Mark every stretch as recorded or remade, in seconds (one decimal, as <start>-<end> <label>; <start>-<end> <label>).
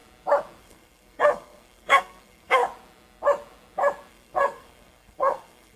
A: 0.0-0.6 recorded; 0.6-2.6 remade; 2.6-4.1 recorded; 4.1-5.8 remade